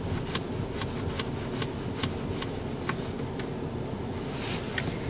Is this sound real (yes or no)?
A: yes